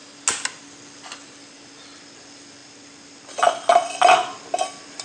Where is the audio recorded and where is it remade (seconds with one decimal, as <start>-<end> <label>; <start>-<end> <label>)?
0.0-5.0 recorded